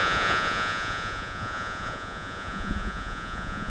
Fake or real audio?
fake